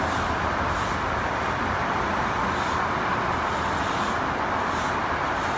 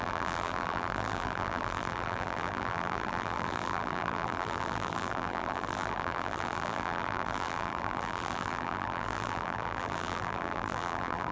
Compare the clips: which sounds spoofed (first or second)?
second